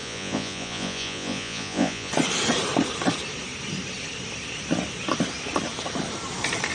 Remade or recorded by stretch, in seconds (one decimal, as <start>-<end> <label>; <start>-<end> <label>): 0.0-2.1 remade; 2.1-6.7 recorded